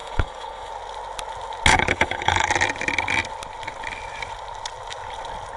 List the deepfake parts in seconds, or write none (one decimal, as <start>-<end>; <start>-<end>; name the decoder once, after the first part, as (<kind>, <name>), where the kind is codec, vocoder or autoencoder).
0.0-0.7 (codec, HILCodec); 1.7-2.5